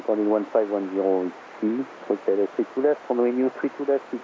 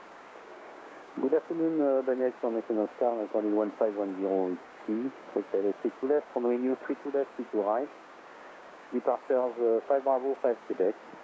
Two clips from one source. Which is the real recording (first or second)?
first